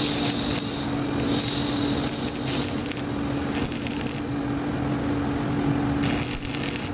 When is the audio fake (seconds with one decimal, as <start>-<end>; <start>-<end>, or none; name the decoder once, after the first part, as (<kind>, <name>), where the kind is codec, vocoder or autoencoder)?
none